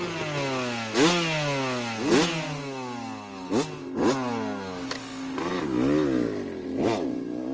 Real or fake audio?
real